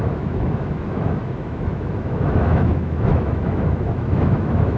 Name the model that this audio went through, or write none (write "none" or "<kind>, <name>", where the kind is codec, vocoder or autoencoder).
autoencoder, DAC-VAE